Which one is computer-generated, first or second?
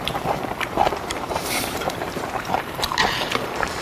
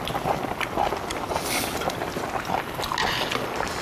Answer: first